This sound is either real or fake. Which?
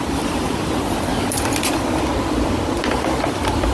fake